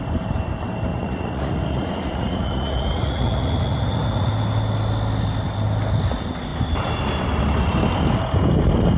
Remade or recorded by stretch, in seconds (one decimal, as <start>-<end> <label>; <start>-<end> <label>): 0.0-0.9 recorded; 0.9-4.3 remade; 4.3-9.0 recorded